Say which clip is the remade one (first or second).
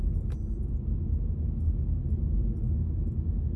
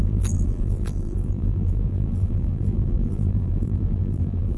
second